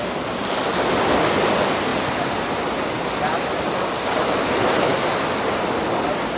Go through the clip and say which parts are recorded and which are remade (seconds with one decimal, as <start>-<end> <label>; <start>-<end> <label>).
0.0-6.4 recorded